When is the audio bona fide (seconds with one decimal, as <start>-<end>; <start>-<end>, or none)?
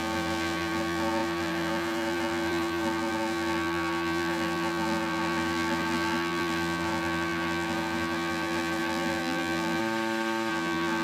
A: 9.8-10.5